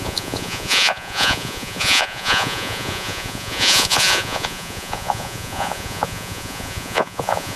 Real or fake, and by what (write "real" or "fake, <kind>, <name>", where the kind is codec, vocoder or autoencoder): fake, vocoder, Vocos